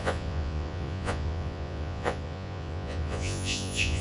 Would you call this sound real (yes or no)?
no